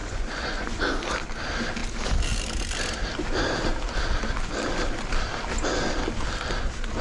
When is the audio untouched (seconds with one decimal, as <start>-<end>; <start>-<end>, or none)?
0.8-7.0